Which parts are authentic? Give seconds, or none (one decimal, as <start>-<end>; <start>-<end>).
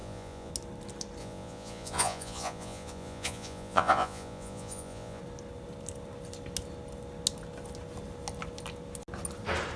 0.5-1.2; 5.2-9.8